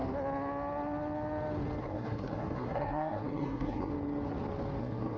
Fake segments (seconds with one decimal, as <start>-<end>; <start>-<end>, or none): 1.8-3.9; 4.8-5.2